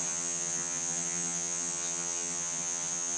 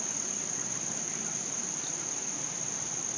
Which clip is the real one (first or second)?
second